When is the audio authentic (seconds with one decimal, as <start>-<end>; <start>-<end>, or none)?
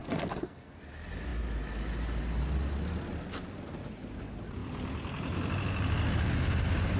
0.8-7.0